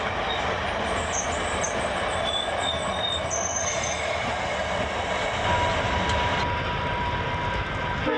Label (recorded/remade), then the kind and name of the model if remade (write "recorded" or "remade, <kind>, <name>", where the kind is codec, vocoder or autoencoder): recorded